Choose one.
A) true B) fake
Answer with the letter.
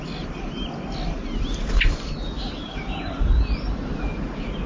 A